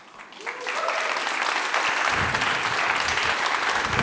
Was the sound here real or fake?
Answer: real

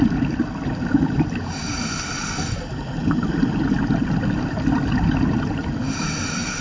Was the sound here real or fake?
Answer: real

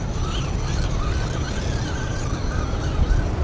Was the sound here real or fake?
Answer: real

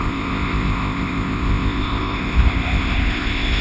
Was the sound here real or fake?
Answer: fake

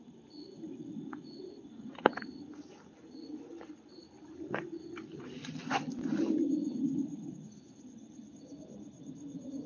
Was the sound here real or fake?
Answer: real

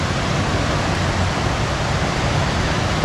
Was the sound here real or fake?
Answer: real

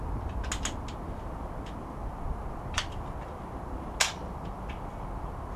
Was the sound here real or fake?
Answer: real